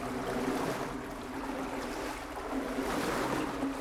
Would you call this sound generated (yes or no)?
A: no